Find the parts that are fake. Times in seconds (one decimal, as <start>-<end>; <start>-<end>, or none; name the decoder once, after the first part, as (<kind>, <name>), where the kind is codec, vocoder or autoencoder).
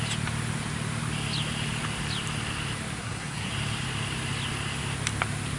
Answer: 3.0-3.5 (codec, SNAC)